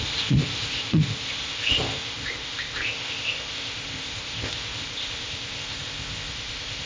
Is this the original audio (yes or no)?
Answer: no